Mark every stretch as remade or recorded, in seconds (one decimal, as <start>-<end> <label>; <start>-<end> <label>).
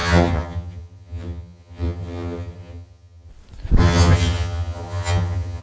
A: 0.0-3.3 remade; 3.3-3.8 recorded; 3.8-5.6 remade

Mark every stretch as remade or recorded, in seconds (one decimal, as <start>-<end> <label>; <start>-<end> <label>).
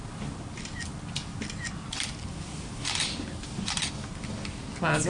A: 0.0-5.1 recorded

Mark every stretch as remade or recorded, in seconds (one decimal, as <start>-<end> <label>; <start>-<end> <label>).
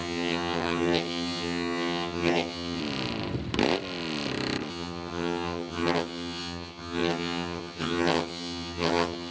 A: 0.0-2.8 remade; 2.8-4.7 recorded; 4.7-9.3 remade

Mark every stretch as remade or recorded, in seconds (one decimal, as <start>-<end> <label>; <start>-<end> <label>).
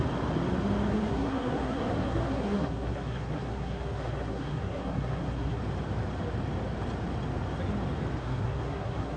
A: 0.0-0.9 recorded; 0.9-5.6 remade; 5.6-8.2 recorded; 8.2-9.2 remade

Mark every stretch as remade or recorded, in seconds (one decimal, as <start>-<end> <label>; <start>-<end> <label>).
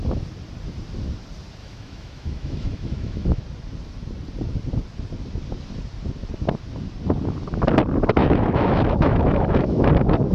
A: 0.0-1.6 recorded; 1.6-3.4 remade; 3.4-8.2 recorded; 8.2-9.9 remade; 9.9-10.3 recorded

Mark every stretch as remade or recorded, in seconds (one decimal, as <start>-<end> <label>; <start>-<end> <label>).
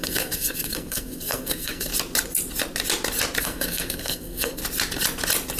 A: 0.0-1.9 remade; 1.9-3.4 recorded; 3.4-4.6 remade; 4.6-5.6 recorded